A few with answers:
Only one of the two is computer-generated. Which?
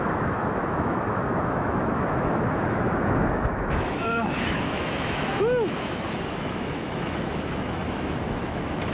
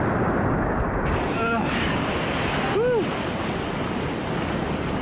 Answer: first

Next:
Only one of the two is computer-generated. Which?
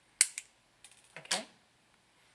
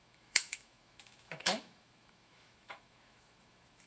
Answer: second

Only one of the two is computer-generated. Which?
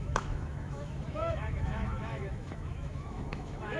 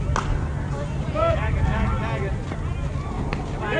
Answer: first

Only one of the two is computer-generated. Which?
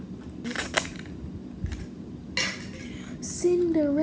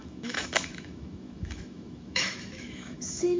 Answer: second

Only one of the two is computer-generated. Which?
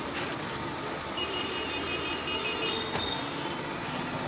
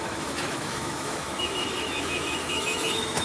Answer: second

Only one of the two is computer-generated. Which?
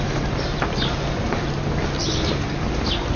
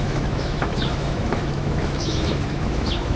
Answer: second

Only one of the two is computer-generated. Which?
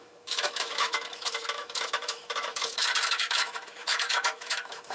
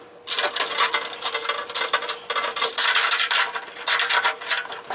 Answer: first